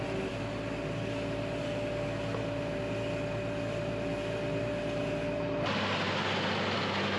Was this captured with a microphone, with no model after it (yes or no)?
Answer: yes